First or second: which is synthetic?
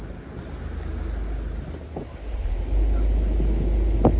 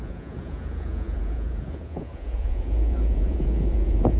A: second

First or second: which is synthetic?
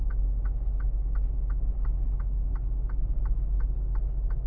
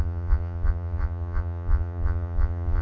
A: second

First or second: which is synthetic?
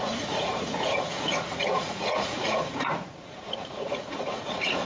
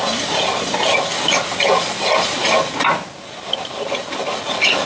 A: first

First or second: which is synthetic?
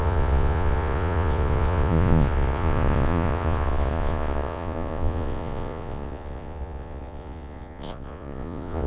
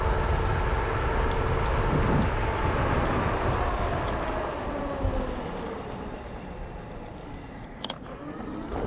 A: first